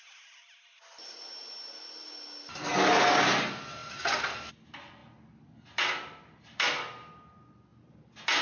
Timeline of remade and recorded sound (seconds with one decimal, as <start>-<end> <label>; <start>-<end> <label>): 0.0-8.4 recorded